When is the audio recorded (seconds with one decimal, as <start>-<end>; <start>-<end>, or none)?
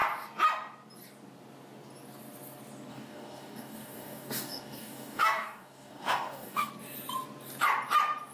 0.0-2.9; 6.7-8.3